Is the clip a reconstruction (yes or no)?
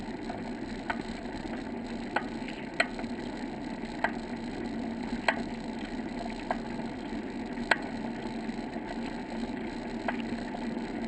no